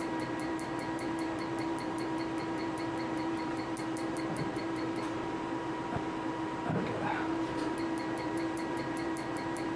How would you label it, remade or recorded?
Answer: remade